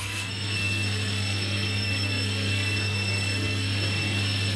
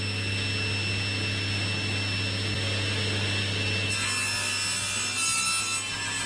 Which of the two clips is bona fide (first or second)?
second